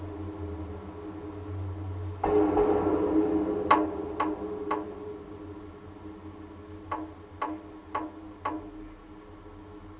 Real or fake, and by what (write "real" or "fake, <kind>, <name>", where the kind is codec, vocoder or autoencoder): real